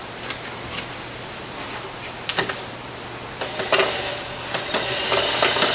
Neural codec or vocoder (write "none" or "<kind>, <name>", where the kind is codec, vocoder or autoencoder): none